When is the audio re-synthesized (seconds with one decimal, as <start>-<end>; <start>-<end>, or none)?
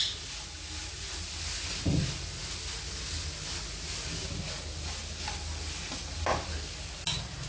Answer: none